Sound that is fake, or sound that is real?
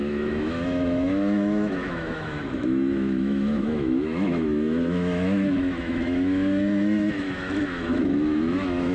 fake